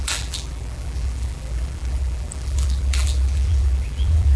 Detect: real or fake fake